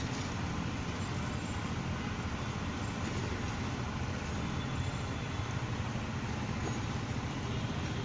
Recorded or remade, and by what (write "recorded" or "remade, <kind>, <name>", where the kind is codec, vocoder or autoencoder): recorded